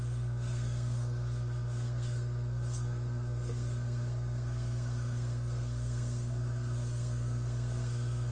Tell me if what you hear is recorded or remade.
remade